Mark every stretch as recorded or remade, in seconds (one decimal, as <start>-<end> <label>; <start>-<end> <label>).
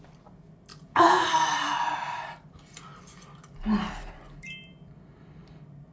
0.0-0.7 recorded; 0.7-1.2 remade; 1.2-5.9 recorded